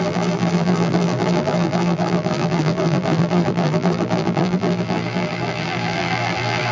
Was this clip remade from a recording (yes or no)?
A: yes